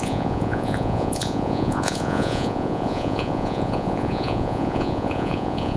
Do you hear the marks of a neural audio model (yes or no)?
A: yes